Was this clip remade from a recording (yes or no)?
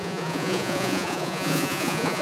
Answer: yes